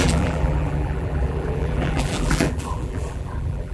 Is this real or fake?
fake